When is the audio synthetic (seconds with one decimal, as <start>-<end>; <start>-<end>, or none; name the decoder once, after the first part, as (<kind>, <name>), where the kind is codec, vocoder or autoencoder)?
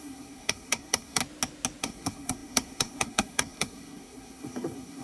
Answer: 0.0-1.2 (codec, SNAC); 1.8-5.0